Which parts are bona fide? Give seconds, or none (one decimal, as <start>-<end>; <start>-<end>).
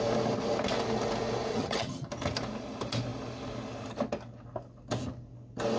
0.0-1.5; 2.1-5.8